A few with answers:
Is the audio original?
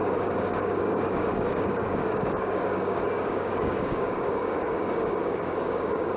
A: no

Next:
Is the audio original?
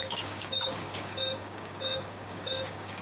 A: no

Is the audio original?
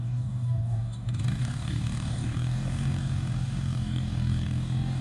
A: no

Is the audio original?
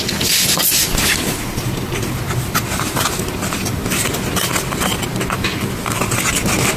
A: yes